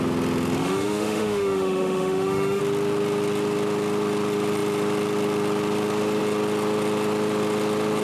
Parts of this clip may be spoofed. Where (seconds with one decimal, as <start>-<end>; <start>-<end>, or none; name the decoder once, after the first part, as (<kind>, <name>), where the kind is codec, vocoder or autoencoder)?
0.6-2.6 (autoencoder, DAC-VAE)